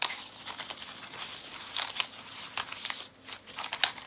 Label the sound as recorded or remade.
recorded